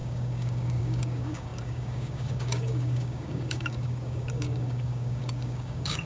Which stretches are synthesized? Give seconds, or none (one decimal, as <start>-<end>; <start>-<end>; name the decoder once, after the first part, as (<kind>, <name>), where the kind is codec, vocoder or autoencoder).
0.0-6.1 (codec, DAC)